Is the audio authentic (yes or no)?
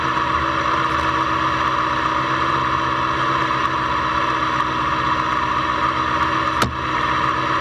yes